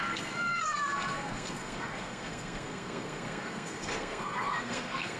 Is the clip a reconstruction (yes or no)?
yes